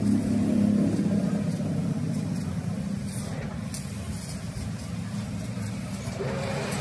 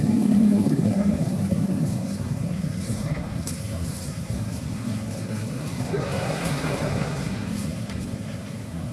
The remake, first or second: second